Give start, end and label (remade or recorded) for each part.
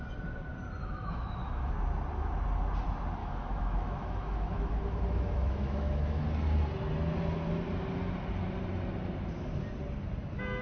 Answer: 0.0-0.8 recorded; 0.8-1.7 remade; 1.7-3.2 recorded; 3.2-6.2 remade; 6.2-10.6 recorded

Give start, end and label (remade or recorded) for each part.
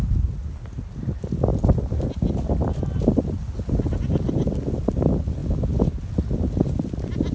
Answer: 0.0-7.3 recorded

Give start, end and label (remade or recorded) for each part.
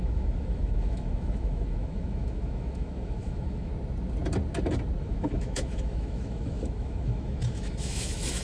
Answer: 0.0-3.7 remade; 3.7-5.0 recorded; 5.0-8.4 remade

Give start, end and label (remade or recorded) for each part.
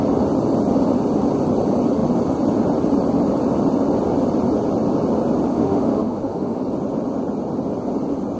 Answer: 0.0-5.5 recorded; 5.5-6.6 remade; 6.6-8.4 recorded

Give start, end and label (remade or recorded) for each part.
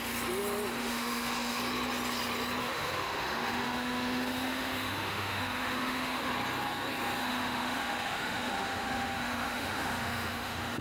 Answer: 0.0-0.8 recorded; 0.8-1.6 remade; 1.6-2.6 recorded; 2.6-6.3 remade; 6.3-7.2 recorded; 7.2-10.8 remade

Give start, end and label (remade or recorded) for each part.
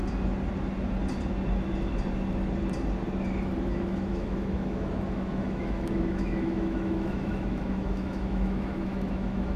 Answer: 0.0-3.6 recorded; 3.6-9.6 remade